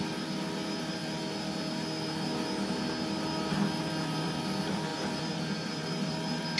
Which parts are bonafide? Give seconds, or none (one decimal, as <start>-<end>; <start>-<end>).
1.0-4.2